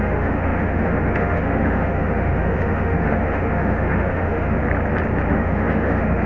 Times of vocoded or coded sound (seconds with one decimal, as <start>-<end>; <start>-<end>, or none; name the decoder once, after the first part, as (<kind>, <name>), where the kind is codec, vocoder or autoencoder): 0.0-4.6 (autoencoder, DAC-VAE); 5.3-6.3